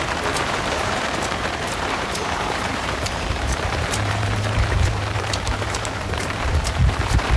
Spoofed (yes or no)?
yes